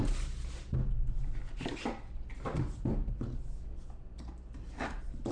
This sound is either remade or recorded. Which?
recorded